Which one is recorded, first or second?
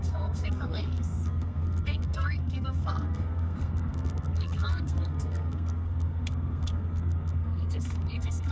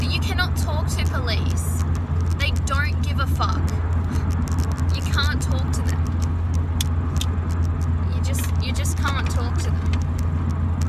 second